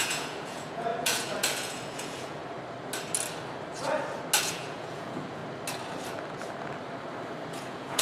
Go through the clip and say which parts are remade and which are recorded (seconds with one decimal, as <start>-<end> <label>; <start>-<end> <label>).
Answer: 0.0-2.4 remade; 2.4-4.4 recorded; 4.4-5.4 remade; 5.4-7.5 recorded; 7.5-8.0 remade